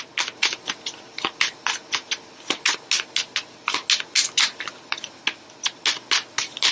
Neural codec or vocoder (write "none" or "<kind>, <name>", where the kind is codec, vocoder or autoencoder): none